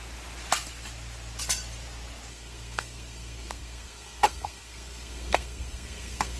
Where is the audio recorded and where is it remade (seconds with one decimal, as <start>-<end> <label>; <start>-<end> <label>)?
0.0-2.3 recorded; 2.3-6.4 remade